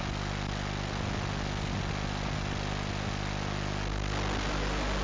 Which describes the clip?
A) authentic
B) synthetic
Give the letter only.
A